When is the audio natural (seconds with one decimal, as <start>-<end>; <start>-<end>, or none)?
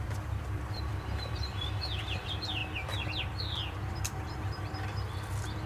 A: 2.6-3.4